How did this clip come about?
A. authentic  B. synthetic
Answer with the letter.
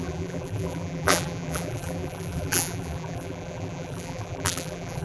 B